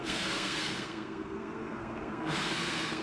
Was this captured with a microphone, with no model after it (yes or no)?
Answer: no